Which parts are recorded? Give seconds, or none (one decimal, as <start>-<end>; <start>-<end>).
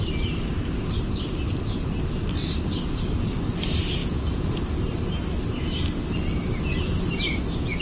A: 0.0-4.0; 4.6-7.8